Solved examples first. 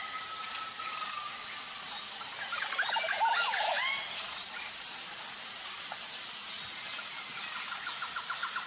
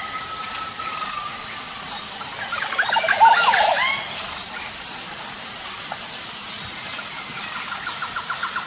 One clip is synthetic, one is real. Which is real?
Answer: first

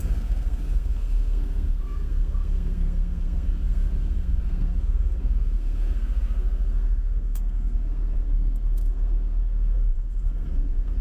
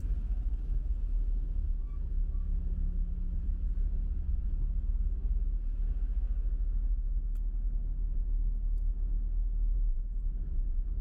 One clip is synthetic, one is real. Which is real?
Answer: second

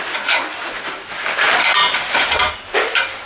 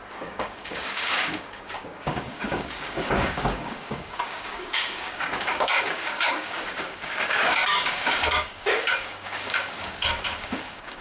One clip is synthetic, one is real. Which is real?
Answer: first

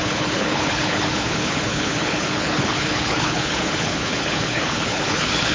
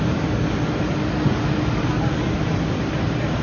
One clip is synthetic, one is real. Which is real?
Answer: second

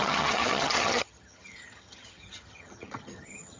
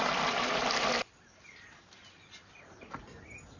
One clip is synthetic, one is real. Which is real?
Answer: second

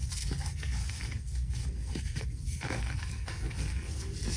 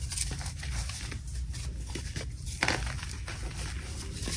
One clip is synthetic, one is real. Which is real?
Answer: second